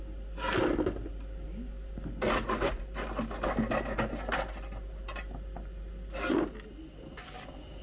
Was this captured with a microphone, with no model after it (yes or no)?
yes